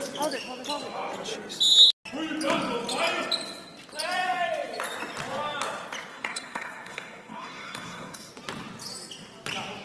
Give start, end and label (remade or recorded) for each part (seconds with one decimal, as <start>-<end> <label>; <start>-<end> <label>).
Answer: 0.0-6.1 recorded; 6.1-8.3 remade; 8.3-9.8 recorded